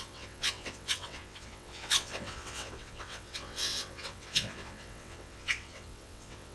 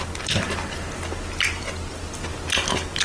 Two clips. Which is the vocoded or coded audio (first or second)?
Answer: first